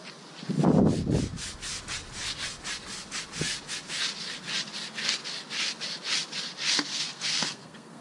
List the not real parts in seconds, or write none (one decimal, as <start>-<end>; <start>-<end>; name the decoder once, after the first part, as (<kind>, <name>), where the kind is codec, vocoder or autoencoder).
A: 6.9-8.0 (codec, SNAC)